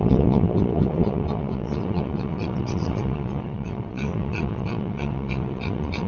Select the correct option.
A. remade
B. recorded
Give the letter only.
A